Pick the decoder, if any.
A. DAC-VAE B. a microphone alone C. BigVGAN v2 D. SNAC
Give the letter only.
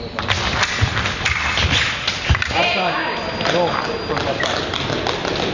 B